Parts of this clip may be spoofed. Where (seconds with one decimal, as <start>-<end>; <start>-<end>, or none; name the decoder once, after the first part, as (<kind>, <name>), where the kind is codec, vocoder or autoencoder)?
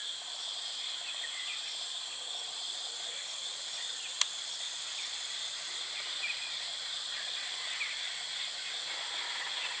none